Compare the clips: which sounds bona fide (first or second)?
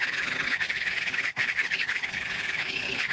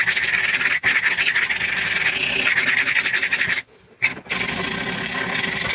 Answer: second